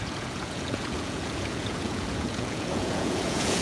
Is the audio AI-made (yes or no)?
yes